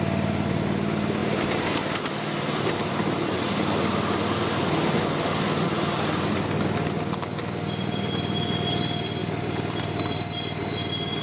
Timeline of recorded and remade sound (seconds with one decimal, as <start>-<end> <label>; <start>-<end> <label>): 0.0-1.2 recorded; 1.2-3.4 remade; 3.4-9.2 recorded; 9.2-10.7 remade; 10.7-11.2 recorded